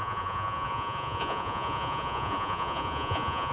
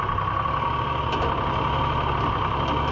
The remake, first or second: first